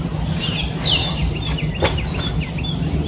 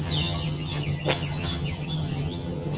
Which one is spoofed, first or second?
second